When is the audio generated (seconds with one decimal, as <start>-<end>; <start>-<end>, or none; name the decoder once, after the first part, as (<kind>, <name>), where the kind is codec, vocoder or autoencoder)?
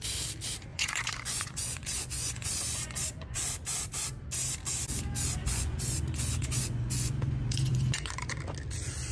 0.7-3.4 (vocoder, Vocos); 5.4-8.4